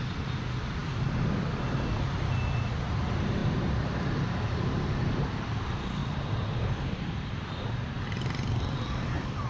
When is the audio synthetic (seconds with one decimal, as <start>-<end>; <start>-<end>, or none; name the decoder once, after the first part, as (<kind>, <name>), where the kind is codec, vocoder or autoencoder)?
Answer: 3.4-4.0 (vocoder, BigVGAN v2); 6.0-9.5